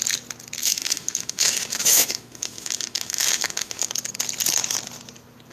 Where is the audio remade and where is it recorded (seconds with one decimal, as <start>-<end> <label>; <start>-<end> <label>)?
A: 0.0-0.6 recorded; 0.6-3.9 remade; 3.9-5.5 recorded